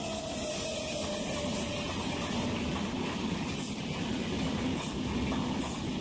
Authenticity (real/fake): real